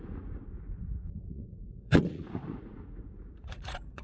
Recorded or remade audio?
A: remade